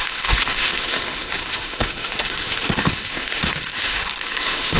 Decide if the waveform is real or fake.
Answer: fake